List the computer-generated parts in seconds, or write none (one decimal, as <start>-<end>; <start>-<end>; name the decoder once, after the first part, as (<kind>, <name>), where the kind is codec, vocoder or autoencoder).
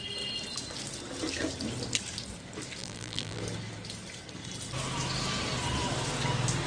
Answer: 2.8-3.4 (vocoder, BigVGAN v2)